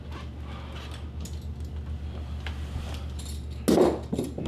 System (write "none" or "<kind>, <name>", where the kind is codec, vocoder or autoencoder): none